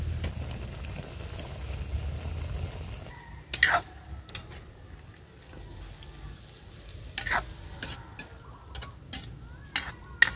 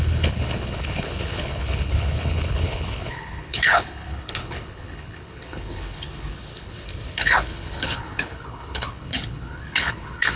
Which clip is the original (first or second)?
first